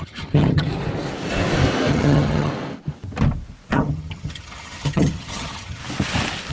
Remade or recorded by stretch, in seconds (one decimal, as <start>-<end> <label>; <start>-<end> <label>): 0.0-0.7 remade; 0.7-1.9 recorded; 1.9-2.5 remade; 2.5-3.7 recorded; 3.7-5.8 remade; 5.8-6.5 recorded